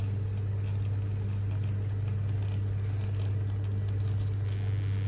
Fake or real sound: real